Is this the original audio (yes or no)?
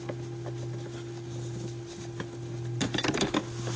yes